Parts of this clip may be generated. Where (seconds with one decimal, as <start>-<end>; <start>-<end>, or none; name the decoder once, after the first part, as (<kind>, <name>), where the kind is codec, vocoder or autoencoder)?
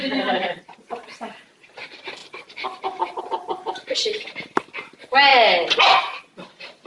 none